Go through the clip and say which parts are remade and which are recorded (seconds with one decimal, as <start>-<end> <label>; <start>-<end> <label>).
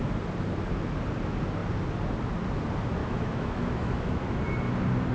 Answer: 0.0-3.0 recorded; 3.0-4.4 remade; 4.4-5.1 recorded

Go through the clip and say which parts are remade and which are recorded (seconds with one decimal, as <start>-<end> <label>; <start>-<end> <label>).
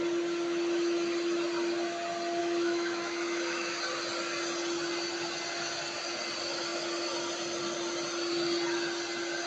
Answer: 0.0-2.4 recorded; 2.4-3.8 remade; 3.8-9.5 recorded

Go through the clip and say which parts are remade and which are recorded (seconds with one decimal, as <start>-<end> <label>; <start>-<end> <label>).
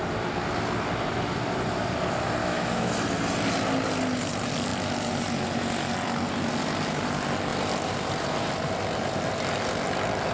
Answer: 0.0-2.4 recorded; 2.4-2.9 remade; 2.9-10.3 recorded